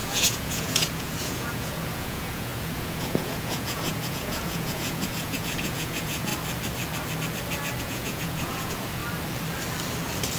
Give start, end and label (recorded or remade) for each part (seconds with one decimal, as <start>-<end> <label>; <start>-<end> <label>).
0.0-6.3 remade; 6.3-7.8 recorded; 7.8-9.0 remade; 9.0-10.4 recorded